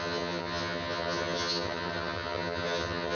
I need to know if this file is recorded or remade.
remade